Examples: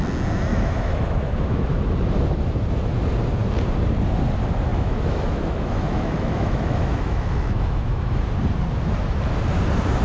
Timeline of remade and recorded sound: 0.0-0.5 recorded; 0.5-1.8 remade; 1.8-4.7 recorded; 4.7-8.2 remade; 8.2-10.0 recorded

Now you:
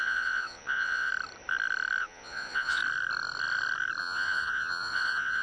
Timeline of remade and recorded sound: 0.0-1.1 remade; 1.1-2.0 recorded; 2.0-2.8 remade; 2.8-4.0 recorded; 4.0-5.4 remade

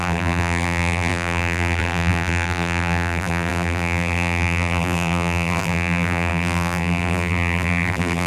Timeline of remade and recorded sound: 0.0-8.3 remade

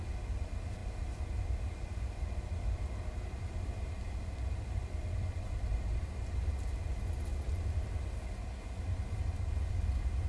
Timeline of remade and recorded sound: 0.0-0.8 recorded; 0.8-5.8 remade; 5.8-10.3 recorded

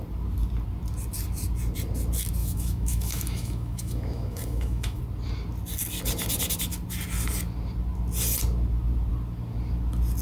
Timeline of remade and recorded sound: 0.0-2.4 recorded; 2.4-5.0 remade; 5.0-10.2 recorded

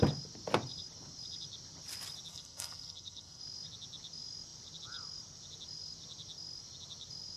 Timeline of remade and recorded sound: 0.0-2.3 recorded; 2.3-3.4 remade; 3.4-7.4 recorded

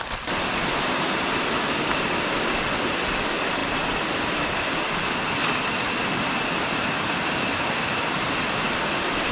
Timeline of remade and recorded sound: 0.0-9.3 recorded